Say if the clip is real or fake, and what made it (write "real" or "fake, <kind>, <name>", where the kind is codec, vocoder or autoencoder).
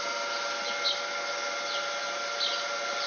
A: real